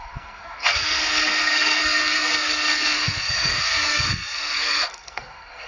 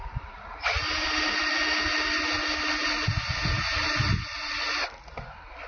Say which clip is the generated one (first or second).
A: first